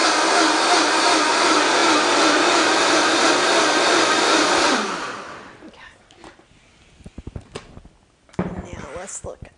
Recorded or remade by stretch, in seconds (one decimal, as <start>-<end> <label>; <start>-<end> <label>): 0.0-9.6 recorded